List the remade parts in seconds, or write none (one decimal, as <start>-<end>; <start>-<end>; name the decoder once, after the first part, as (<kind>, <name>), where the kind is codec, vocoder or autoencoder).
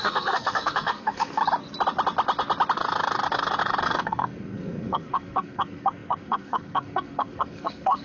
0.0-1.4 (codec, SNAC); 3.8-8.0